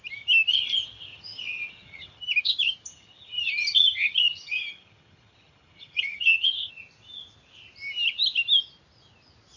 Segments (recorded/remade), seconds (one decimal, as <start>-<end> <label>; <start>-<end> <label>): 0.0-0.5 recorded; 0.5-2.2 remade; 2.2-2.9 recorded; 2.9-6.7 remade; 6.7-9.6 recorded